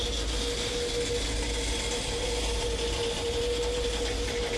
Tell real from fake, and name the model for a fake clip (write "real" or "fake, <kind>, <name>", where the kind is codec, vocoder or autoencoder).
real